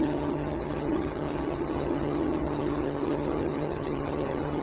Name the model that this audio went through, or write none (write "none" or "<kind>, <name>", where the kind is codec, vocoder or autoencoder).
vocoder, HiFi-GAN